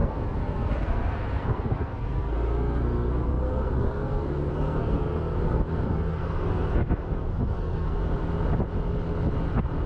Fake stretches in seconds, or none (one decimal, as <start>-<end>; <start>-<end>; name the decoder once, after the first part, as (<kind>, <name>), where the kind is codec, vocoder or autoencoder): 0.0-8.0 (codec, SNAC)